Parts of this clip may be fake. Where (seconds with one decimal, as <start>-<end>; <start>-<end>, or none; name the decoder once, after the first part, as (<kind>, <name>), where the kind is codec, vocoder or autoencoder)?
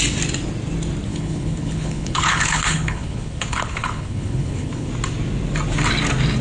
1.1-4.9 (codec, HILCodec)